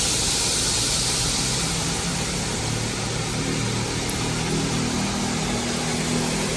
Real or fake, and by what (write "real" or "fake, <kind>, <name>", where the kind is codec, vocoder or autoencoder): real